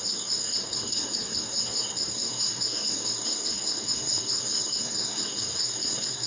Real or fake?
fake